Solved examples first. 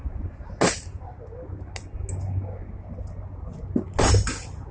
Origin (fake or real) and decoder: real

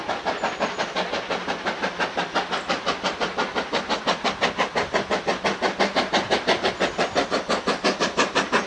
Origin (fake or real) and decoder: real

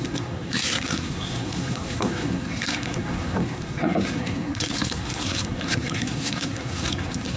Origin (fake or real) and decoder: fake, codec, SNAC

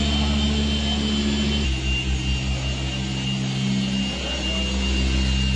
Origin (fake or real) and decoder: real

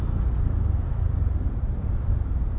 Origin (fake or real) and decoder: real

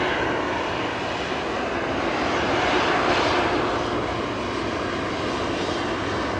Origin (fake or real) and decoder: real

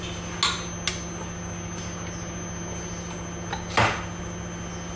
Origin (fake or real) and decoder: real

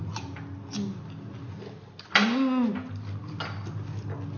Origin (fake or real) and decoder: real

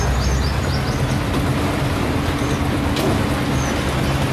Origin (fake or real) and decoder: real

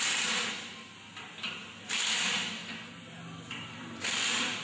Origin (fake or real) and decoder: real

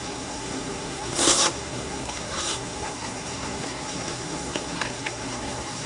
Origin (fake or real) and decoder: fake, codec, SNAC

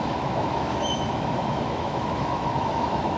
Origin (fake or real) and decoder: fake, autoencoder, DAC-VAE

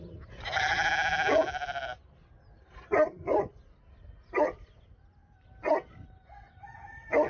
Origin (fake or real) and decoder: real